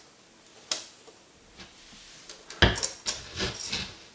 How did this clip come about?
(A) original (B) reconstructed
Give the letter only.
A